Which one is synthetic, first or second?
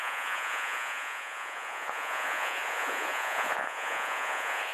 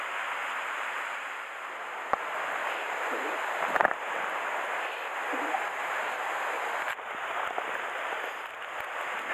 first